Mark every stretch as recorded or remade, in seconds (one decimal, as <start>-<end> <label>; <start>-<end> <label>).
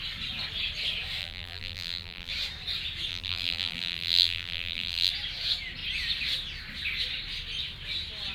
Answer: 0.0-1.2 recorded; 1.2-2.3 remade; 2.3-3.1 recorded; 3.1-5.1 remade; 5.1-8.3 recorded